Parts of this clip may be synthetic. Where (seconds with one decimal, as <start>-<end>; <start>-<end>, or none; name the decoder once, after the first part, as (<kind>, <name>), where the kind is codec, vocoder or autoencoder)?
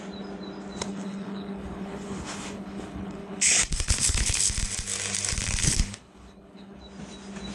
0.8-4.4 (codec, HILCodec); 5.6-6.8